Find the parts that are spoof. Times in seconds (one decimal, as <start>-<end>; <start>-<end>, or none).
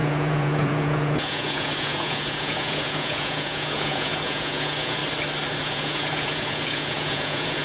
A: 0.0-5.0; 5.6-7.6